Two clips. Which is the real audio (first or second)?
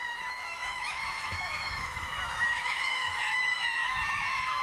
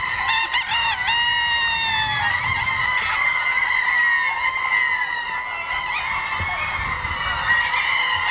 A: second